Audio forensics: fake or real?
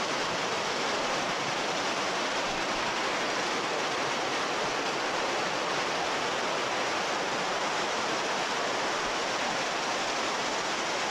real